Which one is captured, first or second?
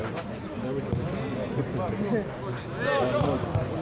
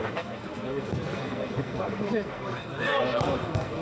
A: first